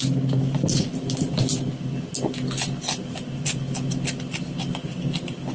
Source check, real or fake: real